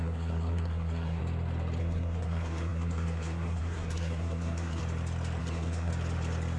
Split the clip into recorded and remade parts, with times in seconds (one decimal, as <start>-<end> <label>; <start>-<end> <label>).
0.0-1.2 remade; 1.2-1.8 recorded; 1.8-4.8 remade; 4.8-5.4 recorded; 5.4-5.9 remade; 5.9-6.6 recorded